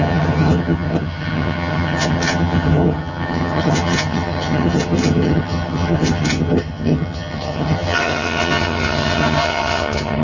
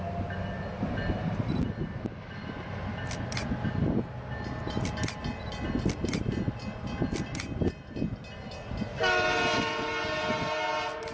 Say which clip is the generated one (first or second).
first